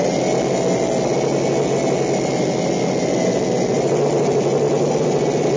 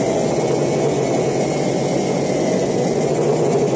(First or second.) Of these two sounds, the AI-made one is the second